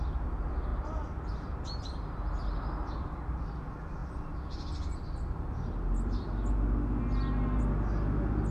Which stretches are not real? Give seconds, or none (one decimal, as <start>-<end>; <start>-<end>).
0.7-1.8; 2.8-3.4